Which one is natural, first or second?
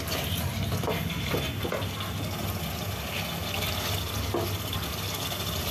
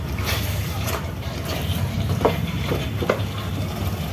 first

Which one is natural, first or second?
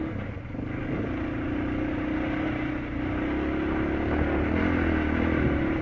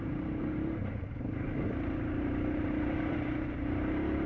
first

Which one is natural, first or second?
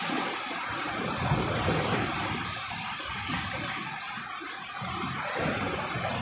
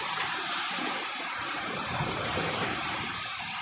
first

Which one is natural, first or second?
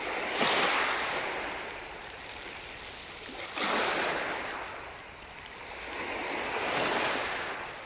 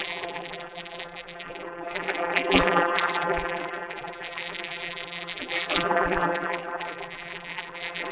first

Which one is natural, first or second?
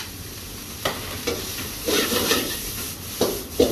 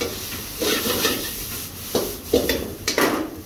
second